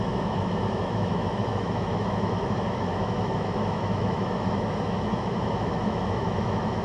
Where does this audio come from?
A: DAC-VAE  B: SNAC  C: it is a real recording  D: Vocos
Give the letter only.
A